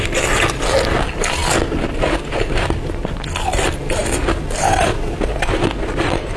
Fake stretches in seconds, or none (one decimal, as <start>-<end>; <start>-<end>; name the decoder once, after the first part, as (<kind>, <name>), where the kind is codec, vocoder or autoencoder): none